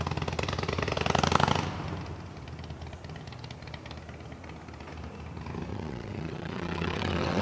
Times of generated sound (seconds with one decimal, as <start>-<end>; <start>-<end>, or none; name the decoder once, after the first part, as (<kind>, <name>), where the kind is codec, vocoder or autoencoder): 5.7-7.4 (vocoder, WaveNeXt)